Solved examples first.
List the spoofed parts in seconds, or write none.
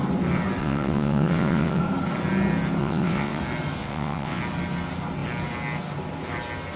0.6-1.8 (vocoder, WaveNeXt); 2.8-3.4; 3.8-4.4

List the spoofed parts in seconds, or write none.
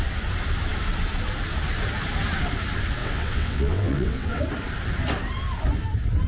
3.0-4.4 (vocoder, WaveNeXt)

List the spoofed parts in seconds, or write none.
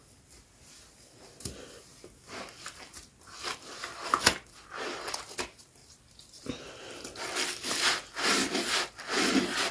none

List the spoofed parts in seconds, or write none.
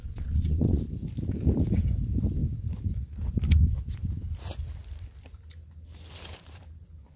0.0-0.8 (vocoder, WaveNeXt)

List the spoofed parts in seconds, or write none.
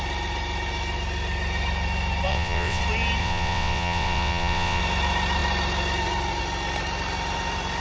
2.3-2.8 (vocoder, WaveNeXt); 3.2-4.8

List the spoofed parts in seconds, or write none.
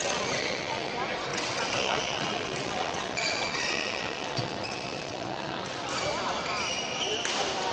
0.0-0.9 (vocoder, WaveNeXt); 1.3-5.9